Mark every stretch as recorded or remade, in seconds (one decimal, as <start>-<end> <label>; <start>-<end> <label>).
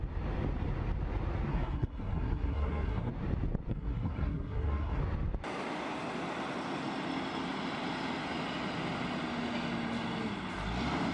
0.0-1.5 recorded; 1.5-3.1 remade; 3.1-3.7 recorded; 3.7-5.0 remade; 5.0-11.1 recorded